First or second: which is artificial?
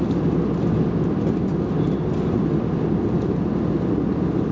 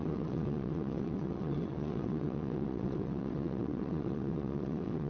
second